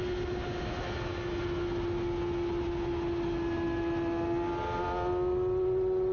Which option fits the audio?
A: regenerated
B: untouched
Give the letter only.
B